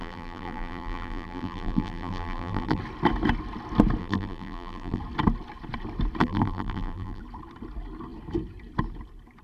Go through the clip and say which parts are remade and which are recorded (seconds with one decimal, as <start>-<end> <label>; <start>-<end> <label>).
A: 0.0-2.8 remade; 2.8-4.0 recorded; 4.0-5.0 remade; 5.0-6.2 recorded; 6.2-7.2 remade; 7.2-9.4 recorded